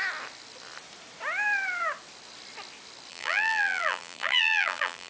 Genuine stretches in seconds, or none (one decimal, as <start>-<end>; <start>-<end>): 0.0-3.1